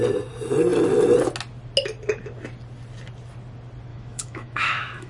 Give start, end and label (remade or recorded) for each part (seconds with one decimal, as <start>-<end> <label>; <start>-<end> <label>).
0.0-3.9 recorded; 3.9-5.1 remade